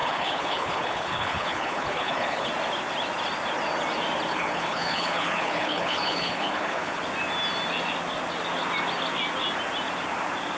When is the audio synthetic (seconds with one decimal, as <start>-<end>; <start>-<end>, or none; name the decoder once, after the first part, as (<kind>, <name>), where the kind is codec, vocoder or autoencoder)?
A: 0.0-2.5 (codec, HILCodec); 4.3-7.0